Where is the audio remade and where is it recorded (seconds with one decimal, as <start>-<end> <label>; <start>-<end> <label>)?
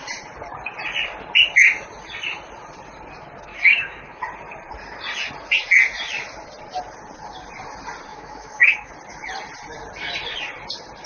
0.0-3.5 recorded; 3.5-4.2 remade; 4.2-8.1 recorded; 8.1-8.9 remade; 8.9-11.1 recorded